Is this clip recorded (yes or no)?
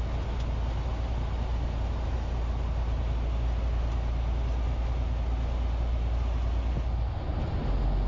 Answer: yes